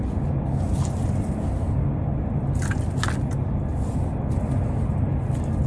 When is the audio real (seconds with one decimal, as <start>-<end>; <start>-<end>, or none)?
0.0-5.7

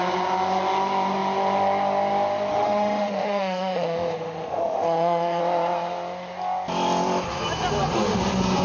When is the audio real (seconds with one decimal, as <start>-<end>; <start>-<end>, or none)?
0.0-2.5; 5.4-8.6